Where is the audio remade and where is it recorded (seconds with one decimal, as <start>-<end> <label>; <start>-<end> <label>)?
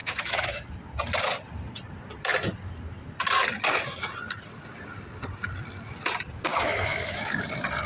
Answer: 0.0-0.7 remade; 0.7-6.5 recorded; 6.5-7.4 remade; 7.4-7.9 recorded